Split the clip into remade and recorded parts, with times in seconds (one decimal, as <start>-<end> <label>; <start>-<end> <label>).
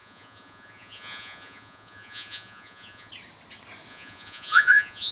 0.0-3.1 remade; 3.1-3.9 recorded; 3.9-5.1 remade